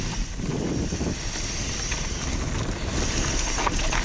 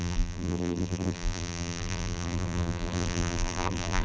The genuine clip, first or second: first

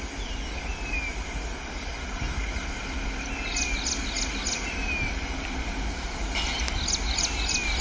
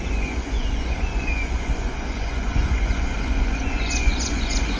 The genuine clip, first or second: first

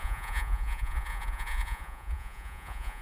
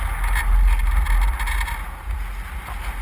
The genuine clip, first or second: second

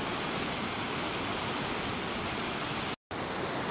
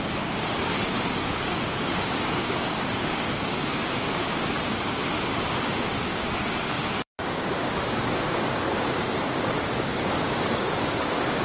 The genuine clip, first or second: first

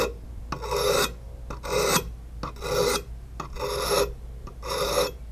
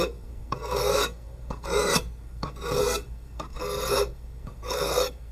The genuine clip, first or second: first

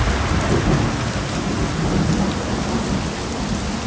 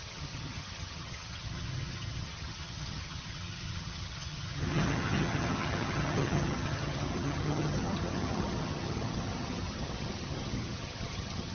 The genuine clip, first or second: first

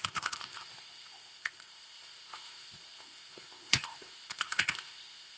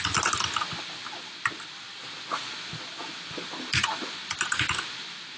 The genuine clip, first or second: second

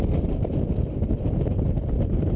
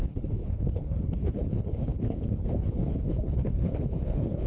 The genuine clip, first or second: first